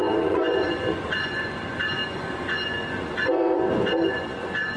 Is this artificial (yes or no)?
yes